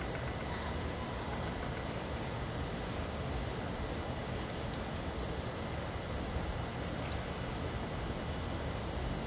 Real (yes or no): yes